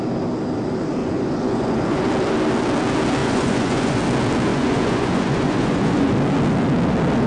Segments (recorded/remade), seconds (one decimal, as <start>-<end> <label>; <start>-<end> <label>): 0.0-1.0 recorded; 1.0-2.1 remade; 2.1-3.2 recorded; 3.2-4.0 remade; 4.0-4.5 recorded; 4.5-6.1 remade; 6.1-7.3 recorded